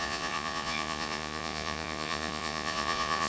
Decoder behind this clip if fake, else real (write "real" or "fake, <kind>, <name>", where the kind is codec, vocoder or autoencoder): fake, vocoder, Vocos